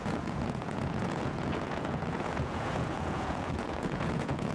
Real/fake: fake